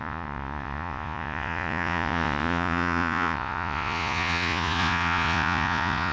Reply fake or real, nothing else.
fake